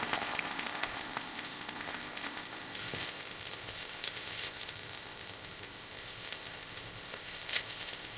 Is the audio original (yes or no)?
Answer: no